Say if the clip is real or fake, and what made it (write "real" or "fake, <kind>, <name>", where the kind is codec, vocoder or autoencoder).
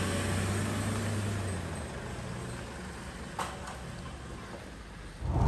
real